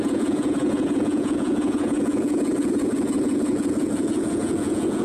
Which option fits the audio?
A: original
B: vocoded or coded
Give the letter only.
B